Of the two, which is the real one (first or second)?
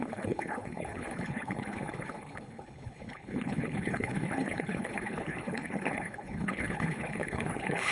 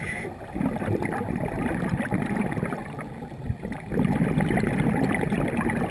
second